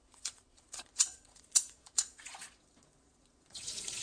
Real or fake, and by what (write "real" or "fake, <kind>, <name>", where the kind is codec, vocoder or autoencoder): fake, vocoder, Vocos